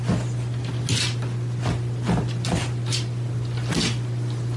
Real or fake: real